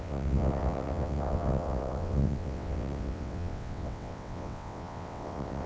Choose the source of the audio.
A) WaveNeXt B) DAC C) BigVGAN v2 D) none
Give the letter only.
A